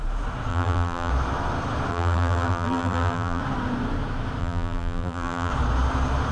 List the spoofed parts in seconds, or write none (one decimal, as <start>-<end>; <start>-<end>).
0.5-1.1; 1.9-3.4; 4.4-5.5